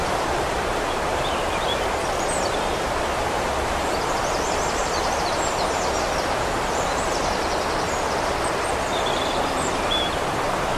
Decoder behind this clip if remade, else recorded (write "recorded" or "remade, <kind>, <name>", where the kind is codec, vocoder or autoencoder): remade, vocoder, BigVGAN v2